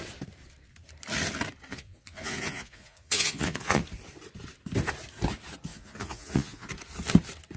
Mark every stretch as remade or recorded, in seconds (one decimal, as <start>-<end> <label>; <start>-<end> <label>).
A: 0.0-1.7 recorded; 1.7-3.8 remade; 3.8-5.7 recorded; 5.7-6.7 remade; 6.7-7.6 recorded